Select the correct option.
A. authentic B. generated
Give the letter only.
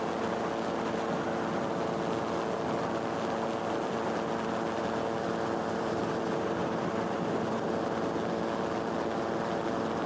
A